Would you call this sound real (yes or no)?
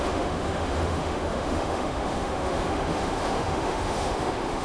no